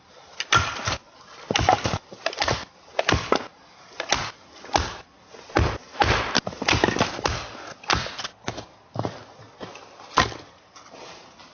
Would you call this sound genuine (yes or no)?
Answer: yes